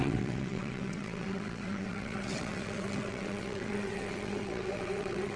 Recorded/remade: remade